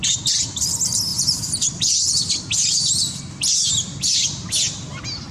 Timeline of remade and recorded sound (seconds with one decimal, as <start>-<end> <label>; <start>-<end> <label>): 0.0-1.1 recorded; 1.1-2.2 remade; 2.2-5.3 recorded